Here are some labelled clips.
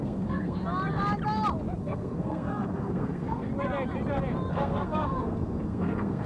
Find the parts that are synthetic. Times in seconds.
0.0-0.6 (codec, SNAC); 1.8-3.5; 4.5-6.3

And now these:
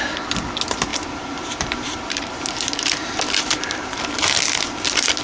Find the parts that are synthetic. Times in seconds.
0.9-4.0 (vocoder, BigVGAN v2)

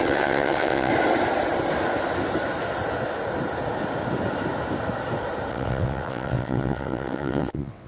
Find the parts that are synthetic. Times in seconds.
0.0-0.9 (vocoder, WaveNeXt); 5.5-7.9

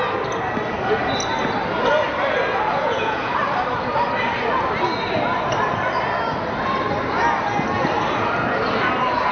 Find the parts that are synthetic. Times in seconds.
2.7-3.4 (vocoder, Vocos)